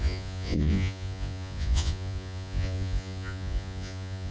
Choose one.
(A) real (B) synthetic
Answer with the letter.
B